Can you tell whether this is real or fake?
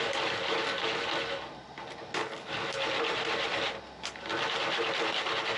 real